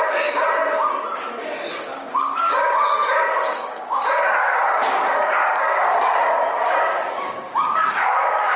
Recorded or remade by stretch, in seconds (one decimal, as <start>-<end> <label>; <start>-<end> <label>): 0.0-0.6 remade; 0.6-1.4 recorded; 1.4-8.6 remade